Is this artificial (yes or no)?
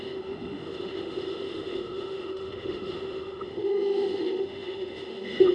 yes